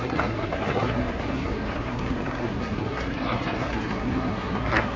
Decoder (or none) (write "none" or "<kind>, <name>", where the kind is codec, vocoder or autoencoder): codec, SNAC